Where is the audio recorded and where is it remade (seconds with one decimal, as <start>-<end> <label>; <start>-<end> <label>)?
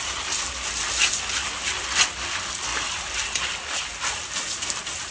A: 0.0-5.1 recorded